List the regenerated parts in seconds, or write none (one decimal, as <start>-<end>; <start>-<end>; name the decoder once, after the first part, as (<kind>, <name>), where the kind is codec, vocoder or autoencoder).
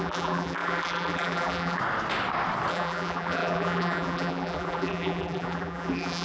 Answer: 0.0-1.8 (vocoder, BigVGAN v2); 2.7-6.2